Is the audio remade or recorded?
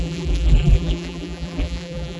remade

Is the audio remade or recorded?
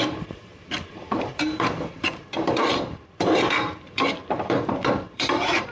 remade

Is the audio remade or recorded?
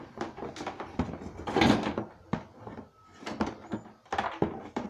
recorded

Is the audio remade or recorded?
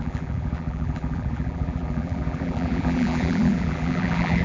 remade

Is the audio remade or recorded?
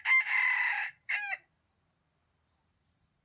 remade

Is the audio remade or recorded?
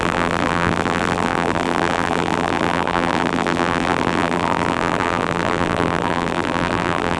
remade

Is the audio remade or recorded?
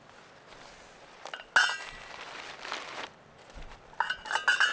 recorded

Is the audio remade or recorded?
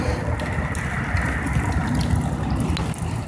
recorded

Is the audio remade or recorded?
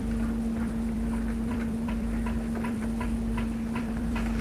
remade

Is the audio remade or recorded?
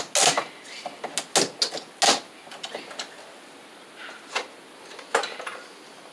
recorded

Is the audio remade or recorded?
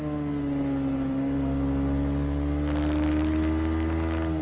recorded